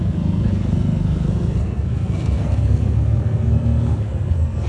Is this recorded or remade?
remade